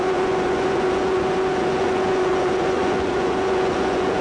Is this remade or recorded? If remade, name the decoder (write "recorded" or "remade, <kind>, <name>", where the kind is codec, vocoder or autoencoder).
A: remade, vocoder, Vocos